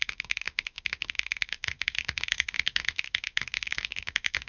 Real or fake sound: fake